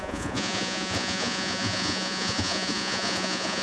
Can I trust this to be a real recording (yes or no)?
no